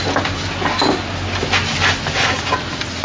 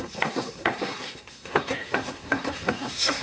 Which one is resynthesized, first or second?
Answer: second